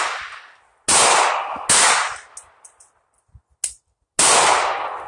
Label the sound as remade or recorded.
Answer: recorded